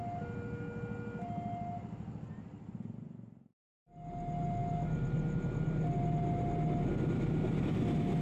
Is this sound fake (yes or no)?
no